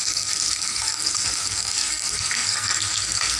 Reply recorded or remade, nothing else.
remade